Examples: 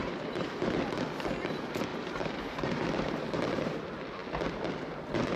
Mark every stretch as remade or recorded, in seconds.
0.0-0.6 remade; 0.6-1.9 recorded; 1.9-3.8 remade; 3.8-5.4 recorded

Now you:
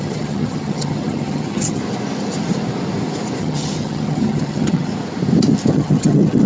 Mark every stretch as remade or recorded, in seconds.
0.0-1.8 remade; 1.8-3.4 recorded; 3.4-4.9 remade; 4.9-5.7 recorded; 5.7-6.5 remade

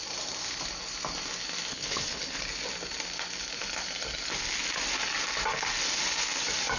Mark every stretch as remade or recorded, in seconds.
0.0-1.7 recorded; 1.7-2.4 remade; 2.4-6.8 recorded

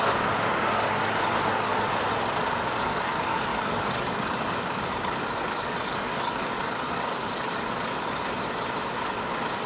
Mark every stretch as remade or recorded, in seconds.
0.0-1.7 remade; 1.7-2.4 recorded; 2.4-8.2 remade; 8.2-9.7 recorded

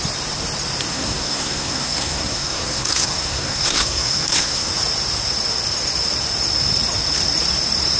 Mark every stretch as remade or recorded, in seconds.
0.0-0.9 recorded; 0.9-4.7 remade; 4.7-8.0 recorded

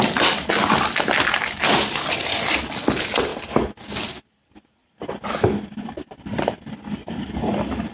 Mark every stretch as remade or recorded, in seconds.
0.0-7.9 recorded

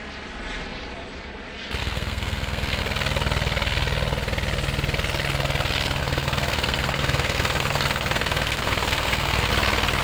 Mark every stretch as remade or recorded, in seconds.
0.0-1.8 recorded; 1.8-2.8 remade; 2.8-6.0 recorded; 6.0-9.5 remade; 9.5-10.0 recorded

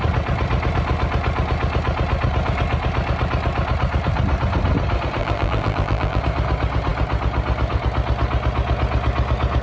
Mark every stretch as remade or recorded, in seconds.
0.0-5.2 recorded; 5.2-6.2 remade; 6.2-9.6 recorded